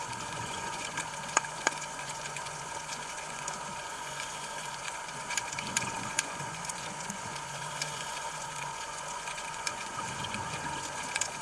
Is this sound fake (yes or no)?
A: yes